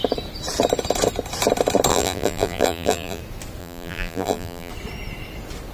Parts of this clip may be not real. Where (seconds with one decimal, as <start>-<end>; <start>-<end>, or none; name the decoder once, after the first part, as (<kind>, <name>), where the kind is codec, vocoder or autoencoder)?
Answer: 1.9-3.2 (vocoder, BigVGAN v2); 3.6-4.7

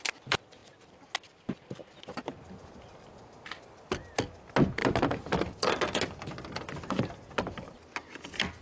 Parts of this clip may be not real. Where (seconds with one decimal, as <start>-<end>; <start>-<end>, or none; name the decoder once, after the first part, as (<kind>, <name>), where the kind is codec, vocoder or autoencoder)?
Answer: none

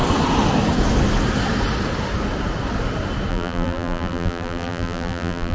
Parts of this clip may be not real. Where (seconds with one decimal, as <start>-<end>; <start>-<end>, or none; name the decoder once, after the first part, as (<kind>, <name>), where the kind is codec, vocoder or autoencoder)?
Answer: 3.3-5.5 (vocoder, BigVGAN v2)

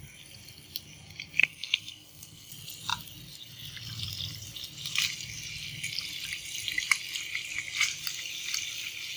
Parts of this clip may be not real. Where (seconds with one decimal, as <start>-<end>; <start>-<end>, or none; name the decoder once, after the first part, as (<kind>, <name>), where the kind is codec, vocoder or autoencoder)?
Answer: 1.4-2.5 (codec, SNAC)

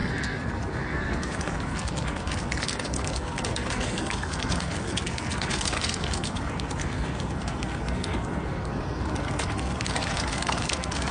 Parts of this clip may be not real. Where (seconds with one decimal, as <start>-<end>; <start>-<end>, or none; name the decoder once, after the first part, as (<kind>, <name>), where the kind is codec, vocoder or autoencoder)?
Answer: 0.0-11.1 (codec, SNAC)